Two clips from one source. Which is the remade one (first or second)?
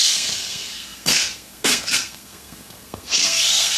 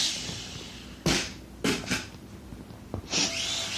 first